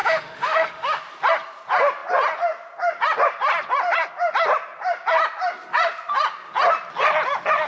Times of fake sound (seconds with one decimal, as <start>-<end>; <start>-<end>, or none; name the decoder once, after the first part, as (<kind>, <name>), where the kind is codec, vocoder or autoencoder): 0.0-1.0 (autoencoder, DAC-VAE)